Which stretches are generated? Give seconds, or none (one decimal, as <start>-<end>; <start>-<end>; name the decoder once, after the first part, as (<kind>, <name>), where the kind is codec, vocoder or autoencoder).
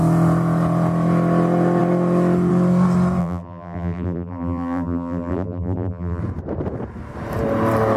3.2-6.2 (vocoder, BigVGAN v2)